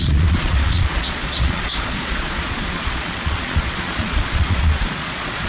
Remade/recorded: remade